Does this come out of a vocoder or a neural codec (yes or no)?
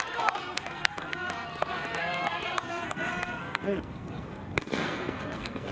yes